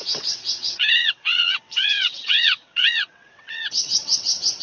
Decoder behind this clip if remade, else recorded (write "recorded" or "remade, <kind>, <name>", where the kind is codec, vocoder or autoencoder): remade, vocoder, WaveNeXt